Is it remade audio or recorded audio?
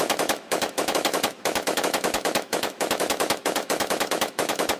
remade